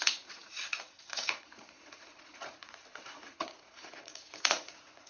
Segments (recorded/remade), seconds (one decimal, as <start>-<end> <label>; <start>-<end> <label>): 0.0-5.1 remade